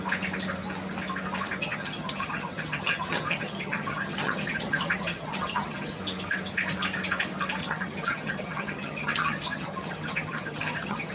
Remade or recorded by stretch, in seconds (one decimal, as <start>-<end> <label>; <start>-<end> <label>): 0.0-1.6 recorded; 1.6-6.0 remade; 6.0-7.6 recorded; 7.6-11.1 remade